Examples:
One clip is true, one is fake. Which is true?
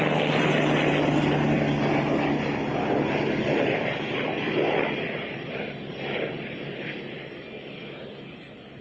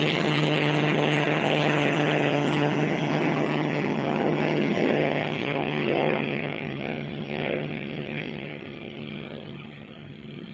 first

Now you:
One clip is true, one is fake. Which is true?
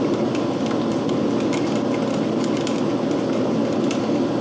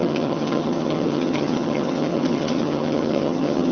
first